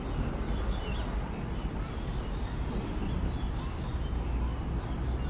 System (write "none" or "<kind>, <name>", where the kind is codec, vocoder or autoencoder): none